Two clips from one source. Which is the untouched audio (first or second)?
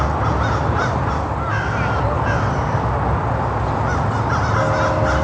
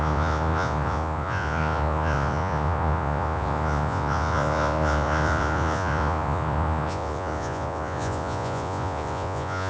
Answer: first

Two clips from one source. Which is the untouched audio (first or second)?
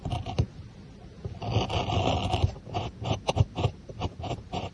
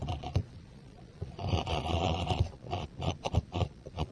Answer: first